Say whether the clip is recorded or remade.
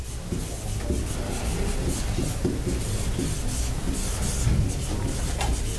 recorded